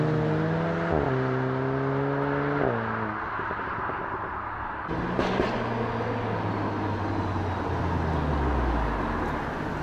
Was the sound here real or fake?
real